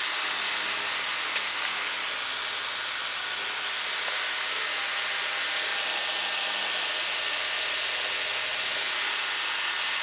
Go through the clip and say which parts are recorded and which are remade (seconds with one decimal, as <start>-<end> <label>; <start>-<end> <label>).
0.0-10.0 recorded